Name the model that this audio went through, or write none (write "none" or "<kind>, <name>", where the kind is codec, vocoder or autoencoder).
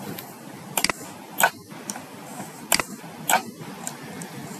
none